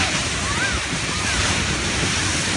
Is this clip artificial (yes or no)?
yes